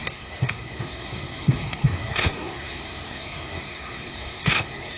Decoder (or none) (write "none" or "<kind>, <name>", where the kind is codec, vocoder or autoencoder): codec, SNAC